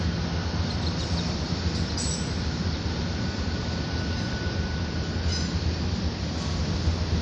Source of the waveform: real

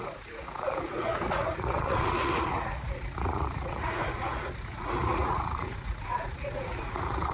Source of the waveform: fake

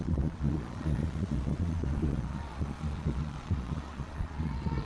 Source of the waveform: fake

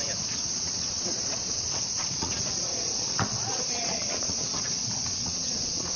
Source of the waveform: fake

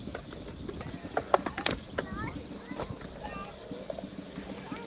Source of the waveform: real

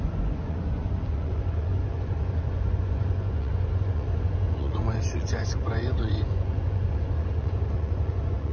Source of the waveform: fake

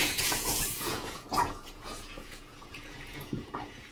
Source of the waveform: fake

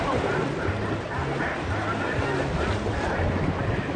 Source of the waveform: real